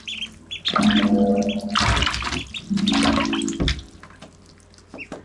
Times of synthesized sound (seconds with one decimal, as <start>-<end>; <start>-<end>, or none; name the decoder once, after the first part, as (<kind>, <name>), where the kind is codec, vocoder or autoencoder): none

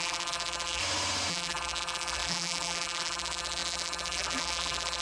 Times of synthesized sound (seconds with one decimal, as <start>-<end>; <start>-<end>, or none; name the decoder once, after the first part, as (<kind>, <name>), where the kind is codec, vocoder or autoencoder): 0.0-0.8 (vocoder, BigVGAN v2); 1.3-5.0

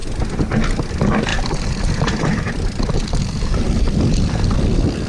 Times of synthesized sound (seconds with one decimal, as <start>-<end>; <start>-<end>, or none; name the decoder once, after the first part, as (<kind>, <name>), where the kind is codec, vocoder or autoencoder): 1.3-4.0 (vocoder, BigVGAN v2)

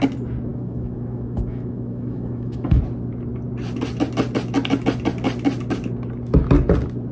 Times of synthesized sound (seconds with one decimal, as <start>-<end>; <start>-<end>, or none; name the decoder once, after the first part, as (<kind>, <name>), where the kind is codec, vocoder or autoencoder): 0.5-2.8 (autoencoder, DAC-VAE)

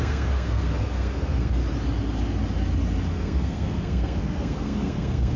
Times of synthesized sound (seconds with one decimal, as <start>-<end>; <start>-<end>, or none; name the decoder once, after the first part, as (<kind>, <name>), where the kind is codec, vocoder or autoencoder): 0.0-1.6 (codec, SNAC); 3.1-5.4

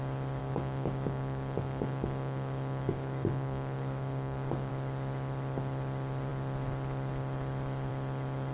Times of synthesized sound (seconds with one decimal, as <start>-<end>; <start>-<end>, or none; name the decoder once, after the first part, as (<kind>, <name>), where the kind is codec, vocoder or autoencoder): 0.4-4.7 (codec, DAC)